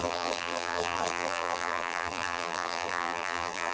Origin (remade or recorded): remade